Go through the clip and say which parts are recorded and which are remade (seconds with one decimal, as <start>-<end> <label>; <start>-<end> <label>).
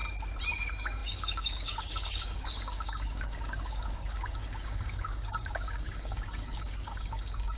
0.0-0.5 recorded; 0.5-7.6 remade